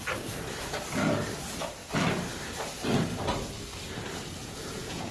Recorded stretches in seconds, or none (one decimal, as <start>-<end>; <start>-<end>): 0.0-4.4